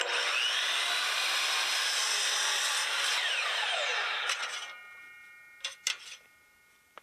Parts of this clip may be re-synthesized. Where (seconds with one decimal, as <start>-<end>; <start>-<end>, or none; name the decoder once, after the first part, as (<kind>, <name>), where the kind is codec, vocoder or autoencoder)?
none